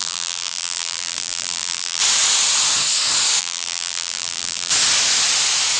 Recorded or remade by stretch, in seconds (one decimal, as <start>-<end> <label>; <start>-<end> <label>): 0.0-2.0 remade; 2.0-3.4 recorded; 3.4-4.7 remade; 4.7-5.8 recorded